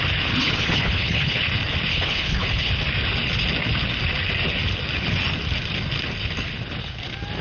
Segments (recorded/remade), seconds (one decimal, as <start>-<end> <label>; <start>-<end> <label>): 0.0-0.4 recorded; 0.4-1.4 remade; 1.4-1.9 recorded; 1.9-2.7 remade; 2.7-7.4 recorded